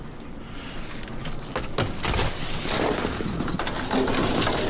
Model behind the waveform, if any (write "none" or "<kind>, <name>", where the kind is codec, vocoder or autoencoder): none